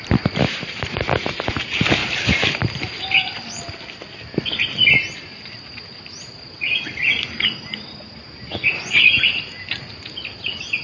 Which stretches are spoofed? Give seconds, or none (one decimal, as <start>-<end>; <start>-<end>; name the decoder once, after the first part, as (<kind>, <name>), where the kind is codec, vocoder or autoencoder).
none